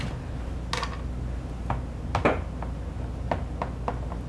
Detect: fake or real real